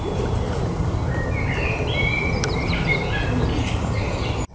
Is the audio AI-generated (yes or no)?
no